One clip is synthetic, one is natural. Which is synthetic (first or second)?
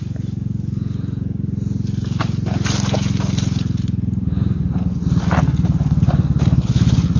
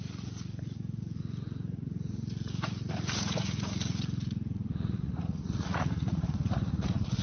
second